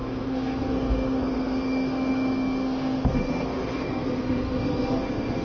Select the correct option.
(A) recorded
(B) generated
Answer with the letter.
B